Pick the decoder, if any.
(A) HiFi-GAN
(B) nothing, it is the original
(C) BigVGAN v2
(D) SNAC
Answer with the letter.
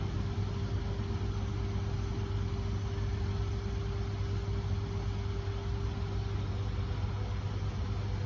B